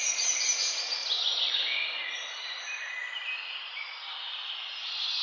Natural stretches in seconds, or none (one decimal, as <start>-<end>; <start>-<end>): 0.0-5.2